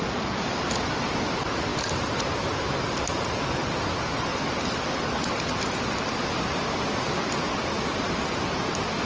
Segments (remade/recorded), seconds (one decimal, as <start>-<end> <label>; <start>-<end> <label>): 0.0-9.1 recorded